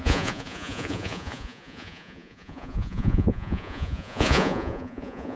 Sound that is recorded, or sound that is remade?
remade